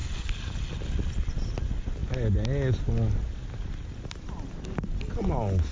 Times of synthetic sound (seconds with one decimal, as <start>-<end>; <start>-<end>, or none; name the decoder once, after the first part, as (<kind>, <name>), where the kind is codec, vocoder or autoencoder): none